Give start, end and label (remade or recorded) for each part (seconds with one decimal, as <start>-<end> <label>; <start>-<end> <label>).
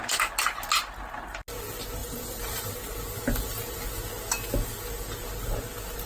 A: 0.0-2.0 recorded; 2.0-3.8 remade; 3.8-6.1 recorded